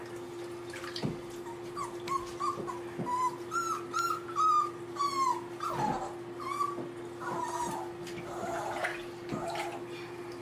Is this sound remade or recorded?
recorded